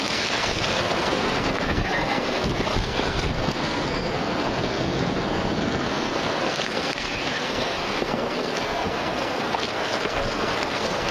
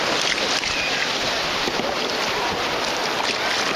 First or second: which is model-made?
first